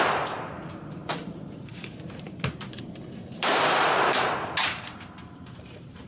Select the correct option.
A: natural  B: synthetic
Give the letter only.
B